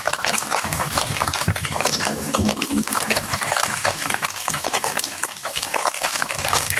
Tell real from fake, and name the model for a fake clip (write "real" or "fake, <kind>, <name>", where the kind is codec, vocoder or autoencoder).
fake, codec, DAC